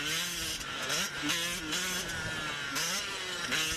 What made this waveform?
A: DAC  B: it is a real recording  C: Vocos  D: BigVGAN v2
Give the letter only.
B